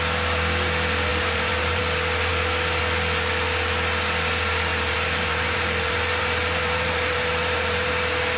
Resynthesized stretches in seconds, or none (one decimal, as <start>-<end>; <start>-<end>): 1.1-1.8; 4.7-7.9